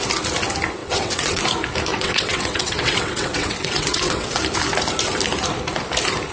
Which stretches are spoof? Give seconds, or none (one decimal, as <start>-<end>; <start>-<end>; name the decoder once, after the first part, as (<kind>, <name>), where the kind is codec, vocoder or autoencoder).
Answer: 0.8-1.4 (vocoder, WaveNeXt); 1.9-4.4